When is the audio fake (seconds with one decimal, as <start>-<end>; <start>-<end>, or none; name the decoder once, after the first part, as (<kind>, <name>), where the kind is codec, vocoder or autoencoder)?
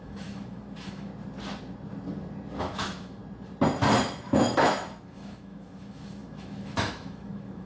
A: 0.0-1.1 (autoencoder, DAC-VAE); 2.6-3.2; 4.0-7.7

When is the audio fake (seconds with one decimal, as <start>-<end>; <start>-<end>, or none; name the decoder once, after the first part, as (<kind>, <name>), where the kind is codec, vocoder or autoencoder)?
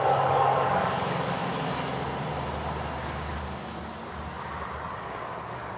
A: 0.0-1.4 (codec, DAC); 4.9-5.8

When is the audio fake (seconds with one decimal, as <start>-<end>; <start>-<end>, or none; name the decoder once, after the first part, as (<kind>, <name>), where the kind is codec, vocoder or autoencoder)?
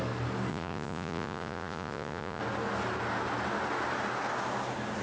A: 0.5-2.4 (vocoder, Vocos)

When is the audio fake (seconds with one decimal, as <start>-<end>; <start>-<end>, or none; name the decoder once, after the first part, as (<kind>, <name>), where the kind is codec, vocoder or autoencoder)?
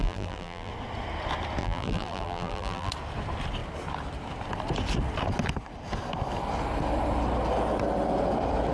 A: 0.0-0.7 (vocoder, BigVGAN v2); 1.6-2.9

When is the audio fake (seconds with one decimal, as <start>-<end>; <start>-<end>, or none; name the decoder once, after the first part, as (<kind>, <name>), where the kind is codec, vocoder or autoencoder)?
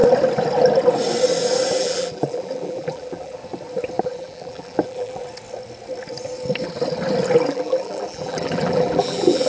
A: 1.8-3.4 (vocoder, BigVGAN v2); 4.0-5.2; 7.5-9.5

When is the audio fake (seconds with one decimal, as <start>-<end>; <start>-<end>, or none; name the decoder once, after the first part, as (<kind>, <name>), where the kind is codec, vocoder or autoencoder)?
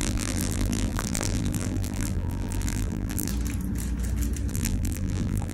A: 0.0-3.3 (vocoder, BigVGAN v2); 4.5-5.5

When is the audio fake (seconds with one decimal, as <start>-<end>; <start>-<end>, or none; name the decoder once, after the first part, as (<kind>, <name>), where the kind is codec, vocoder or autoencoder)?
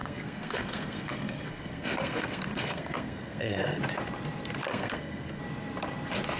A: 0.0-3.8 (codec, SNAC); 4.7-5.4